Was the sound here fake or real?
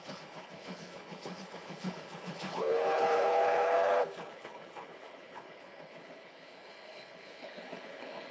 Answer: fake